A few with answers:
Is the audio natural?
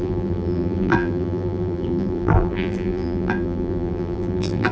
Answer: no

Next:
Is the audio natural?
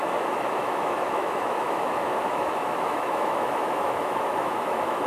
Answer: no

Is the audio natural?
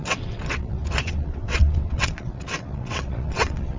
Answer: no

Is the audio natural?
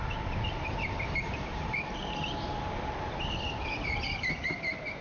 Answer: yes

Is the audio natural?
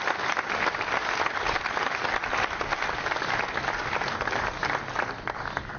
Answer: yes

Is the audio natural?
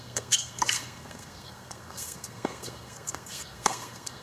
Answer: no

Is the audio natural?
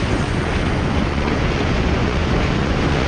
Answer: no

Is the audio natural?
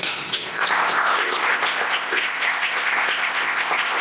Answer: no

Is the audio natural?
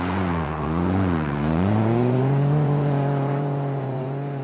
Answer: no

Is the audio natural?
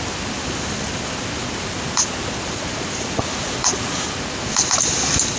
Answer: no